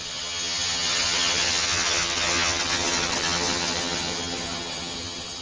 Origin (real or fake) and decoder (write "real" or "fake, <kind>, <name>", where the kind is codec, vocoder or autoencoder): fake, vocoder, HiFi-GAN